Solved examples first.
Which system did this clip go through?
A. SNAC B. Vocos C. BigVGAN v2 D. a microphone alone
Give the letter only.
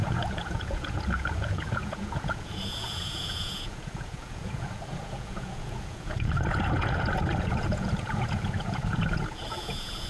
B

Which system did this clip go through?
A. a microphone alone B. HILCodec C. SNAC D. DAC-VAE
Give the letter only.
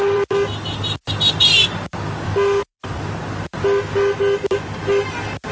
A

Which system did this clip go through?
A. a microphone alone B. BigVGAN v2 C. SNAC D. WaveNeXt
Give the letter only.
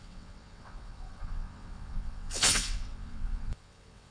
D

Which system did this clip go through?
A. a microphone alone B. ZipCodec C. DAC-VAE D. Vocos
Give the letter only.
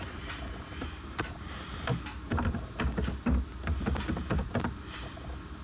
A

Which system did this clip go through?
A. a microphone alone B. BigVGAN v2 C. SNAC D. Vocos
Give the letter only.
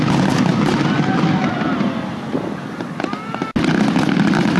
A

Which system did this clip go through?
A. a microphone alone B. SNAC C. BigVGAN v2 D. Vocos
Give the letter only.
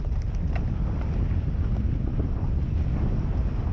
A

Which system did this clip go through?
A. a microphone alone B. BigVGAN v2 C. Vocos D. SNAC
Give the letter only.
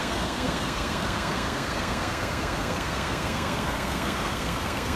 D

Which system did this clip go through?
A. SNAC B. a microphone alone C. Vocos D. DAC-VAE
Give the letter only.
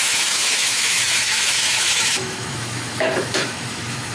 D